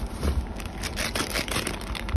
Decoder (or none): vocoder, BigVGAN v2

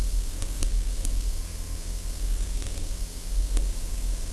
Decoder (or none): codec, SNAC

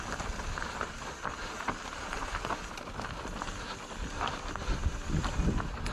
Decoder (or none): none